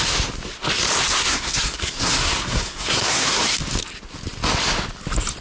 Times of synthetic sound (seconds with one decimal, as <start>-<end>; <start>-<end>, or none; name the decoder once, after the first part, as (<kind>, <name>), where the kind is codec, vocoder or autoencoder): 1.1-3.4 (codec, SNAC)